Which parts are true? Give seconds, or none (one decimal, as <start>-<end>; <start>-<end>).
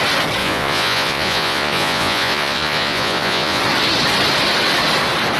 0.0-0.4; 3.6-5.4